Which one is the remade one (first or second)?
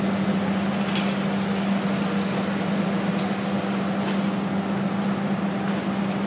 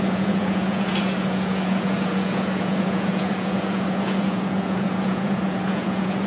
second